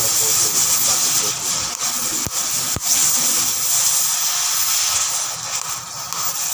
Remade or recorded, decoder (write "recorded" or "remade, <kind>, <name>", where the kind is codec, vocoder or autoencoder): recorded